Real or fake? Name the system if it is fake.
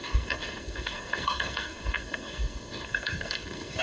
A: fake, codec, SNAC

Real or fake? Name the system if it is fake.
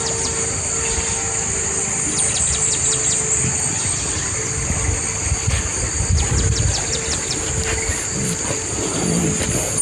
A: real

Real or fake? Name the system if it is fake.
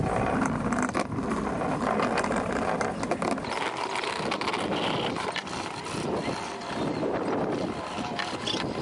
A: real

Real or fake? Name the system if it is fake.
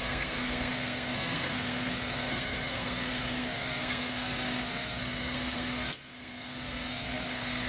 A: fake, codec, SNAC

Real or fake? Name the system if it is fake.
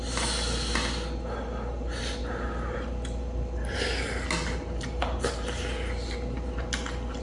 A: real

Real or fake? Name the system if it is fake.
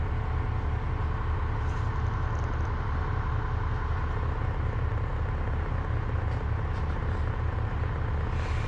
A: real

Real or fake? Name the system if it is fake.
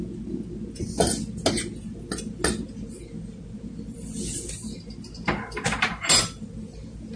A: real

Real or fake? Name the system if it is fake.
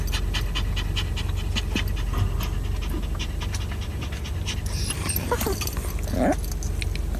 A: real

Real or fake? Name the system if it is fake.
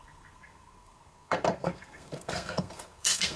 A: fake, codec, SNAC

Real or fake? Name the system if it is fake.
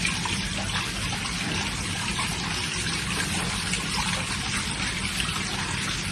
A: real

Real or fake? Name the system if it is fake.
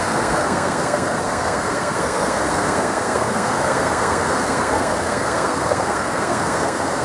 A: fake, codec, SNAC